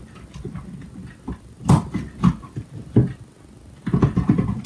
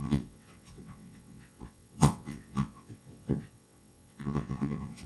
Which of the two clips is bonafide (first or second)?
first